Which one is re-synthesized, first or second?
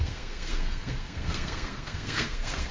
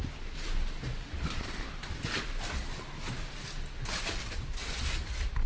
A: first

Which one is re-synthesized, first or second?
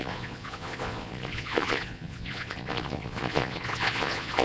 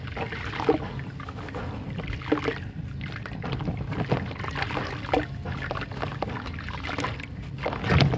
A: first